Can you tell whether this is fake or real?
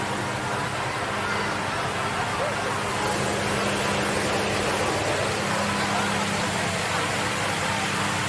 real